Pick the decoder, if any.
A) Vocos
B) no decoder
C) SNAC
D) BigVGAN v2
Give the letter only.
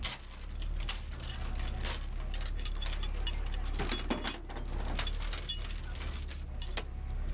B